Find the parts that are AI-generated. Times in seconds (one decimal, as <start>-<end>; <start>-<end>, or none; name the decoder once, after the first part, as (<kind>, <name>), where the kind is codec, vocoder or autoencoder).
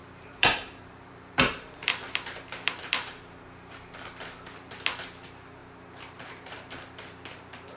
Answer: 0.0-4.7 (vocoder, BigVGAN v2); 5.6-7.8